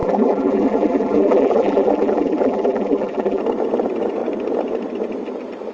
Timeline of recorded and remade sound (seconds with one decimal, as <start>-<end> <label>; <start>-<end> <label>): 0.0-3.4 remade; 3.4-5.7 recorded